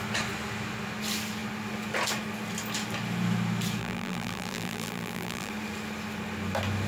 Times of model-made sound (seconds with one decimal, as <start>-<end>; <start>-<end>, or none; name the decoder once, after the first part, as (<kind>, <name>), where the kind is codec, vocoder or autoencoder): 3.8-5.5 (vocoder, BigVGAN v2)